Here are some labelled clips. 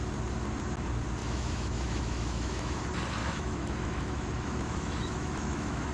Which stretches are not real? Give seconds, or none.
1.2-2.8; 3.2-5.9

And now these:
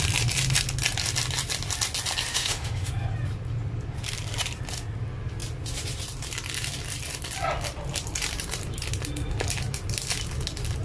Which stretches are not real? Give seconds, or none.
2.3-2.9

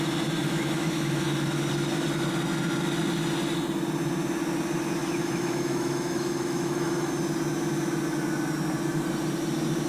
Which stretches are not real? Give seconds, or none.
0.4-1.7; 5.0-7.1

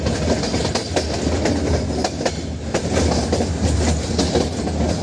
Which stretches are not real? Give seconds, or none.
none

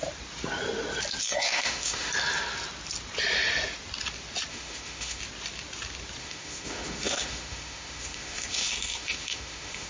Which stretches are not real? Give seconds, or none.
1.2-2.1; 4.5-5.2; 6.2-9.9